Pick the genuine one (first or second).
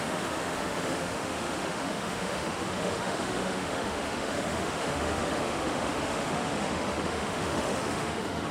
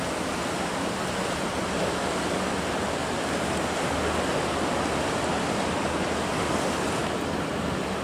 second